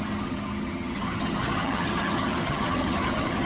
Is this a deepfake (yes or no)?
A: yes